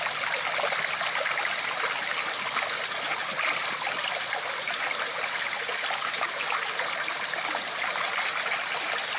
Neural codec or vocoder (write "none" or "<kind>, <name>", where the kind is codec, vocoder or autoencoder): none